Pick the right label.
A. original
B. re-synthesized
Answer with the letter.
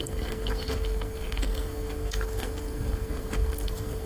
B